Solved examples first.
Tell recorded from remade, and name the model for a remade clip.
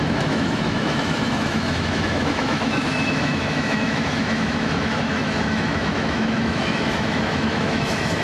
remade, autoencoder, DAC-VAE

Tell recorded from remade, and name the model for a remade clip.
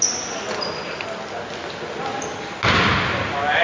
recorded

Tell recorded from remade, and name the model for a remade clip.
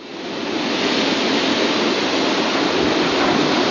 recorded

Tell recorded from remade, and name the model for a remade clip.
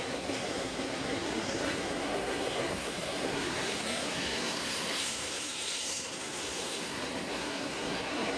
remade, codec, SNAC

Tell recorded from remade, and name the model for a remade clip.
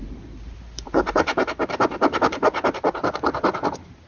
remade, vocoder, BigVGAN v2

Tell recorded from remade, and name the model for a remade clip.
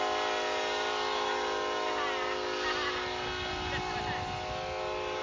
recorded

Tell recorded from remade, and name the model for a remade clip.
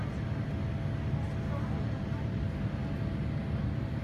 recorded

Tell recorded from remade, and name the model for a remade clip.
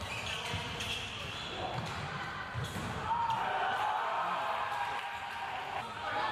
recorded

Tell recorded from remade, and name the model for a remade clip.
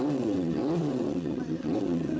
remade, vocoder, WaveNeXt